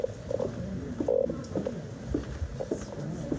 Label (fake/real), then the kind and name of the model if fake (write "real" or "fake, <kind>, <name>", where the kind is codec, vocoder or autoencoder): real